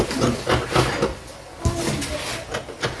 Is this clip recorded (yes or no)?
yes